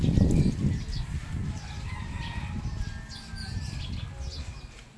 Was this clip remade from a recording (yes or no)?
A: no